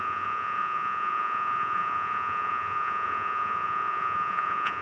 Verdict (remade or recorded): remade